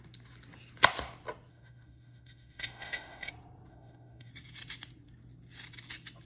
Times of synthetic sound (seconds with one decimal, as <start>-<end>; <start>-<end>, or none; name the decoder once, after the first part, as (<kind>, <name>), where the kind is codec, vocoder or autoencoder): 1.5-3.3 (autoencoder, DAC-VAE); 3.7-4.3